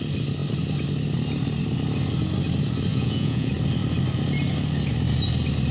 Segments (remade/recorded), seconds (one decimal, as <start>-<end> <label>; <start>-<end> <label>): 0.0-2.9 recorded; 2.9-3.5 remade; 3.5-5.7 recorded